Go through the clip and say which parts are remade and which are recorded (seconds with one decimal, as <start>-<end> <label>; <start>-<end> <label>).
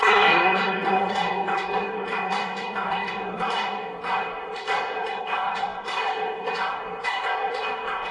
0.0-8.1 remade